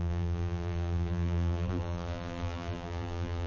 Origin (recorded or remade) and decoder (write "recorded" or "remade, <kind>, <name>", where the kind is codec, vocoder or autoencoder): remade, vocoder, BigVGAN v2